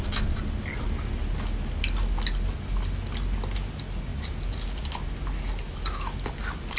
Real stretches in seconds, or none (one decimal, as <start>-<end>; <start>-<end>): 0.0-6.8